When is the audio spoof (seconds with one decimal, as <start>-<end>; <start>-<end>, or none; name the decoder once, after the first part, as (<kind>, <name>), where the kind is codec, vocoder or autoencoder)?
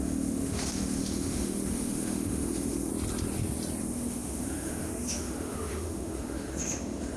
0.0-2.9 (autoencoder, DAC-VAE); 3.8-7.2